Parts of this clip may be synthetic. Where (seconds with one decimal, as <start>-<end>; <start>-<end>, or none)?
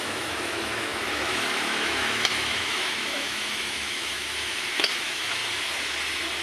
0.0-5.4